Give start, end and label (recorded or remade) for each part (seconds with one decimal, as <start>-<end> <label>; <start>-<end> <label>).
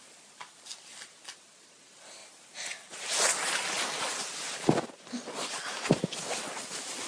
0.0-7.1 recorded